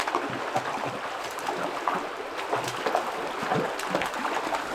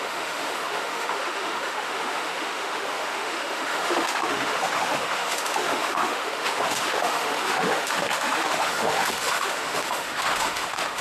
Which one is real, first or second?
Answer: first